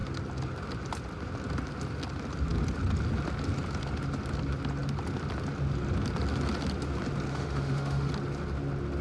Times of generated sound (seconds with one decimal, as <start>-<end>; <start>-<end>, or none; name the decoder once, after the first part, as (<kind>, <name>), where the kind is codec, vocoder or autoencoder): 7.3-8.1 (autoencoder, DAC-VAE)